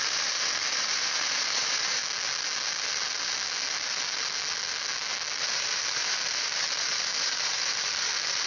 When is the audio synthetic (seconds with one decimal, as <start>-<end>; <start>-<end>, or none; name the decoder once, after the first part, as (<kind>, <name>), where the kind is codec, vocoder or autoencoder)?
0.0-2.0 (vocoder, BigVGAN v2); 5.4-8.5